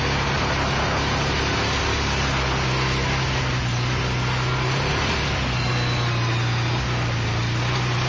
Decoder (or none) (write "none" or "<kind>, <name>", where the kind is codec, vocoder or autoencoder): none